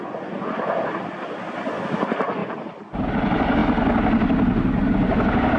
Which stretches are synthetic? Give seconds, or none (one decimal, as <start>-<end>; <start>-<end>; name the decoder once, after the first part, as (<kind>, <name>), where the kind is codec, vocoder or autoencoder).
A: 2.4-3.1 (vocoder, BigVGAN v2)